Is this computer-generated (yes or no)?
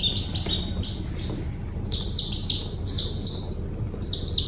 no